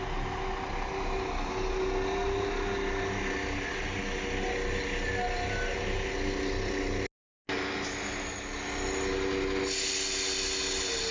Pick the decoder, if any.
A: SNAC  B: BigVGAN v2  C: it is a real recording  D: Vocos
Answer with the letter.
C